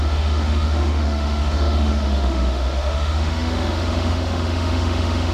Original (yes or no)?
no